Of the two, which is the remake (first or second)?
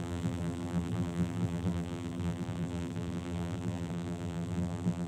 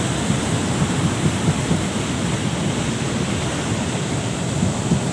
first